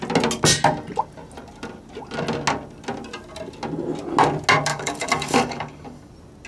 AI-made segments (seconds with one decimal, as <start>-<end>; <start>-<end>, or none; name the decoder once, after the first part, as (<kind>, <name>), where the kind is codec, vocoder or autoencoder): 4.7-6.1 (codec, DAC)